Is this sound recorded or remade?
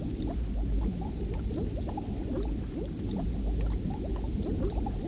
recorded